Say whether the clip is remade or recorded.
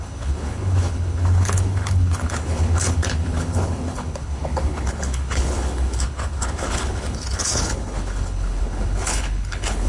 remade